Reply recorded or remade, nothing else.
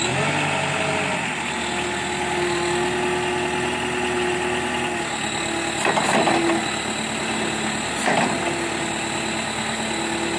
recorded